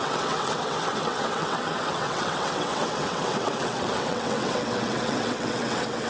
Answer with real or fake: fake